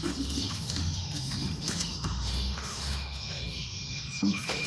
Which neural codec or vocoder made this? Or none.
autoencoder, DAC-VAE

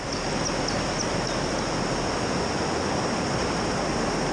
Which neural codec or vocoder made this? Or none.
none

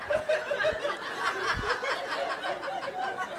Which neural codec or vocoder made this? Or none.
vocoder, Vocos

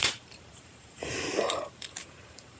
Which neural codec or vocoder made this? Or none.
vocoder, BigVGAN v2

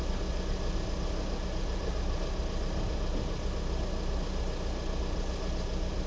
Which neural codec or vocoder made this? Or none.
none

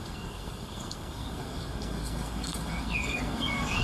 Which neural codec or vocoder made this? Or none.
codec, SNAC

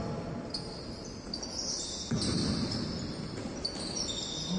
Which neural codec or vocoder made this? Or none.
none